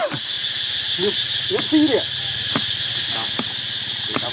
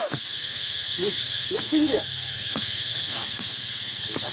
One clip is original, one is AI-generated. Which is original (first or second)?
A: first